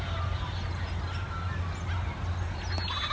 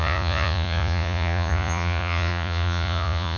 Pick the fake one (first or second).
second